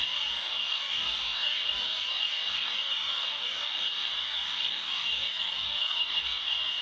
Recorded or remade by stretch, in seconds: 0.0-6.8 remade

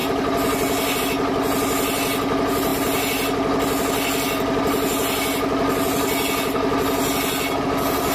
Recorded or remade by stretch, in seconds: 0.0-8.1 recorded